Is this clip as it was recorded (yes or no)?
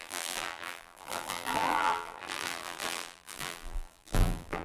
no